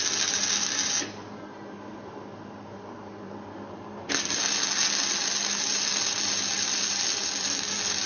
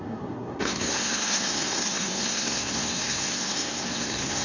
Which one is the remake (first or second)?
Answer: second